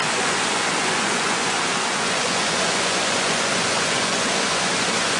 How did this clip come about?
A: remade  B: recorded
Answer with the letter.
A